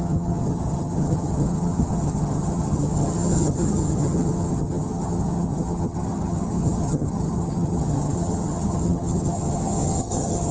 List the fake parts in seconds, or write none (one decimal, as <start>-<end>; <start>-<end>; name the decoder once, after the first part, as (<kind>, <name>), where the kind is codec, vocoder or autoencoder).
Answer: 0.0-10.5 (vocoder, HiFi-GAN)